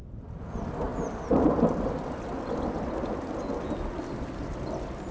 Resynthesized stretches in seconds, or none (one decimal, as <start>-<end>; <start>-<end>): none